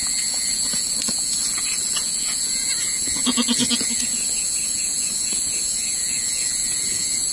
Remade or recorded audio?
remade